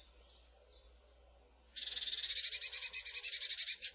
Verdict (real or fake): real